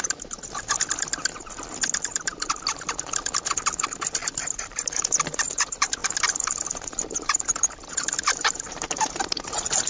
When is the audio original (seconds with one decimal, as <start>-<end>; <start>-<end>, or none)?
0.0-4.2; 5.1-6.0